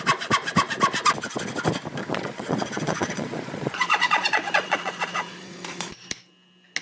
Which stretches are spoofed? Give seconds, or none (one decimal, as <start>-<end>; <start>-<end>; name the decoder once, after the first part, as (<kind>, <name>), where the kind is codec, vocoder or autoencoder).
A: 2.0-5.9 (vocoder, Vocos)